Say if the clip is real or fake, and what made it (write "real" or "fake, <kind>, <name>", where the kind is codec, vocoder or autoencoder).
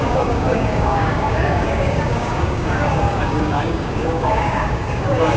fake, codec, DAC